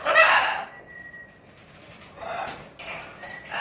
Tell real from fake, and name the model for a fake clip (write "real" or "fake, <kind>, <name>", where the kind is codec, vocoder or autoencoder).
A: real